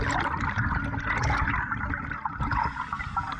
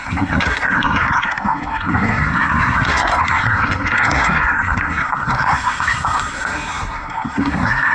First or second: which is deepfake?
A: second